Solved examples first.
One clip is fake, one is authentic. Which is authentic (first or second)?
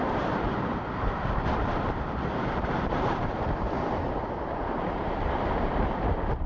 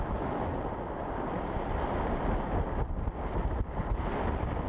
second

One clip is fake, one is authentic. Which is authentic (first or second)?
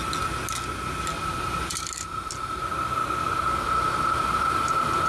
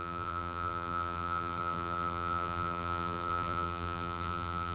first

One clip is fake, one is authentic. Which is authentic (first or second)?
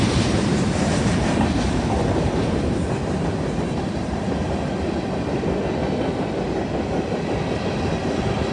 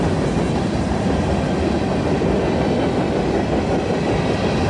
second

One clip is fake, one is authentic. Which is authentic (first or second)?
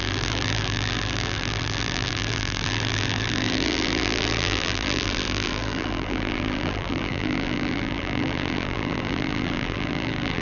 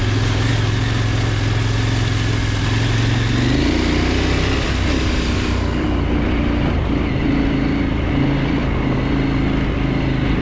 second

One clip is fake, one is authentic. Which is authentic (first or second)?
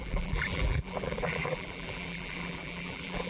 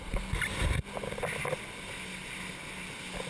second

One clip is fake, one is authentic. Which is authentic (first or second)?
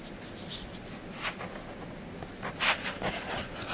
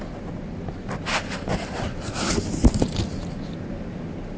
first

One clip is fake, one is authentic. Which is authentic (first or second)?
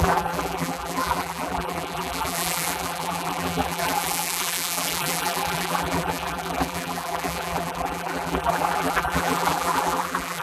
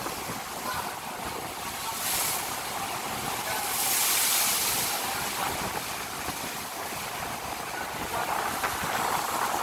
second